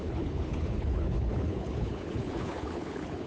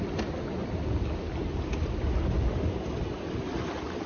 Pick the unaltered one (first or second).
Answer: second